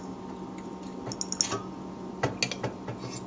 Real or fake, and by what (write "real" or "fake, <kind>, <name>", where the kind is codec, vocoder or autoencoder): real